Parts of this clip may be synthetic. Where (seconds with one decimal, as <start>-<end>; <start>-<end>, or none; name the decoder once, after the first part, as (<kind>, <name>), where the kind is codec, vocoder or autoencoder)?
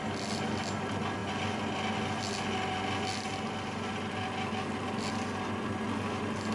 none